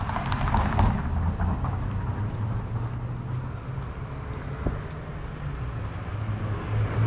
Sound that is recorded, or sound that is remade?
recorded